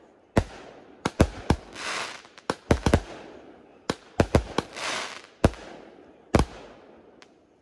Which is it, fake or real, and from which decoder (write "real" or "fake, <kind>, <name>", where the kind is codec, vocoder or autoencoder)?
real